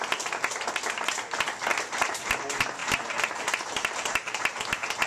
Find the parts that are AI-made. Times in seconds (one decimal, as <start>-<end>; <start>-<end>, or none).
1.7-2.3; 2.8-4.6